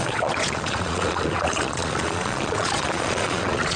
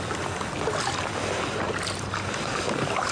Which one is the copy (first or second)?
first